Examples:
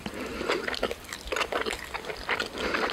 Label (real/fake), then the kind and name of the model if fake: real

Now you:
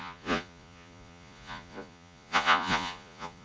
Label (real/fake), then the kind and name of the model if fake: fake, vocoder, Vocos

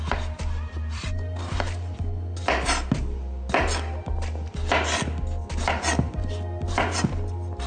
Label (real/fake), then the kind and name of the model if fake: real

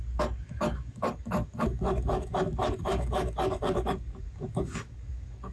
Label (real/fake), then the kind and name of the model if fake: fake, codec, DAC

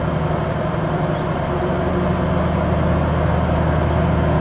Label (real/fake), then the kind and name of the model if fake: real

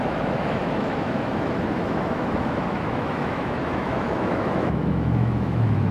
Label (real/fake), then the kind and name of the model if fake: fake, autoencoder, DAC-VAE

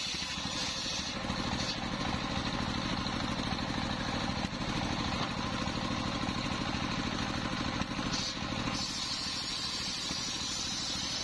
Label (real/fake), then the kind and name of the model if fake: real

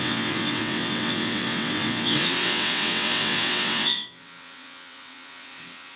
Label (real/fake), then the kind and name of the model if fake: fake, vocoder, WaveNeXt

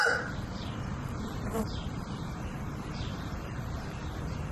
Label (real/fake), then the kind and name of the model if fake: fake, vocoder, BigVGAN v2